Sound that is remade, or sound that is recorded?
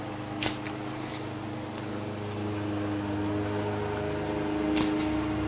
recorded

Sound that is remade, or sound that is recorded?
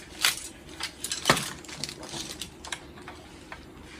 remade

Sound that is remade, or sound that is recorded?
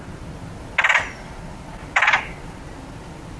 recorded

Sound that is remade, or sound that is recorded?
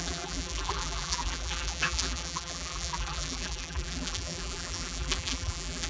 remade